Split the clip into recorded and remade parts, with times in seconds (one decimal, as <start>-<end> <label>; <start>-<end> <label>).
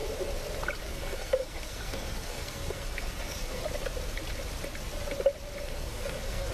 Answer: 0.0-0.8 recorded; 0.8-3.6 remade; 3.6-5.6 recorded; 5.6-6.5 remade